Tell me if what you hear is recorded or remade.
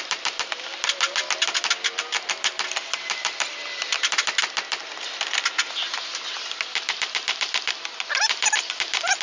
recorded